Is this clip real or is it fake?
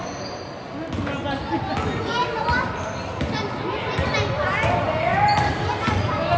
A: real